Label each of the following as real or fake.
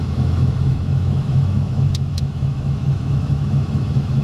fake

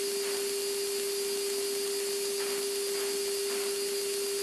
real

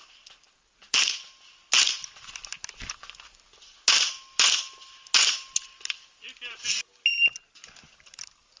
real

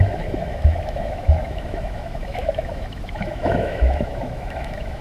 fake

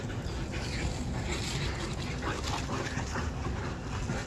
real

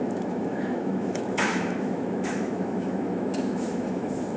fake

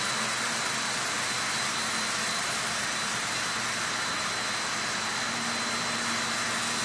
real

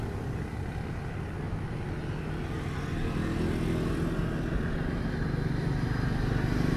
real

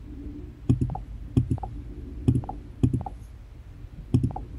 real